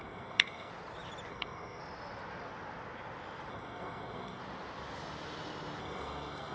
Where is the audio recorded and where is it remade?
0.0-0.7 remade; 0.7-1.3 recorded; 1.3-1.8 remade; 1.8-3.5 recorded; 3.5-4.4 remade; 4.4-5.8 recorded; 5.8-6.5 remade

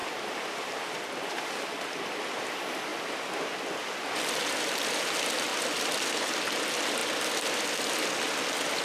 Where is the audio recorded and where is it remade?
0.0-2.4 remade; 2.4-8.8 recorded

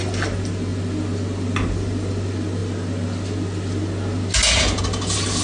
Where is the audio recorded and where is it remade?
0.0-5.4 recorded

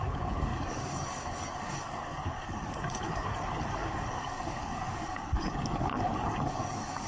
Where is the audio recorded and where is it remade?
0.0-7.1 remade